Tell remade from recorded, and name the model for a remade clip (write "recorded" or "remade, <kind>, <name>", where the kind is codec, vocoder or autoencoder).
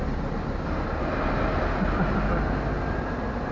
recorded